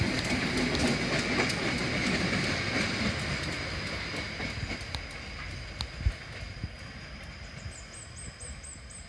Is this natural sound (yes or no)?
yes